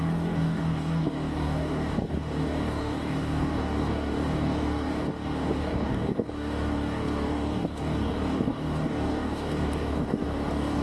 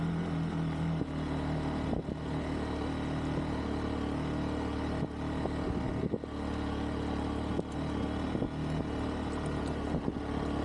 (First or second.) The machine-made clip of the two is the first